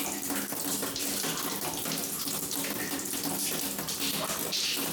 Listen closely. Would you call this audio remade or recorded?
recorded